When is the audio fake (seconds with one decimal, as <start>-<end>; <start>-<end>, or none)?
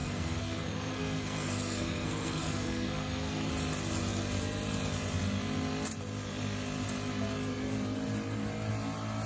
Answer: 0.0-3.5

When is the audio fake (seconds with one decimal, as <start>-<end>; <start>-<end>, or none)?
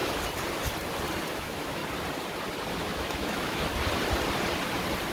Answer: 1.3-1.8; 2.7-3.7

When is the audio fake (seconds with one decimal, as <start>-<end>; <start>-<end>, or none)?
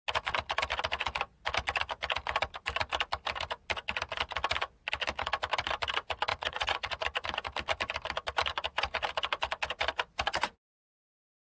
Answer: 6.3-6.9